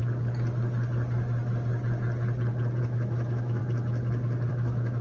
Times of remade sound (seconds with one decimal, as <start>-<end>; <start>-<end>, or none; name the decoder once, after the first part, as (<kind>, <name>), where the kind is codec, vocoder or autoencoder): 2.8-3.6 (autoencoder, DAC-VAE); 4.5-5.0